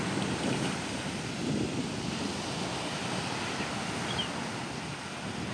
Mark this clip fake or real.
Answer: real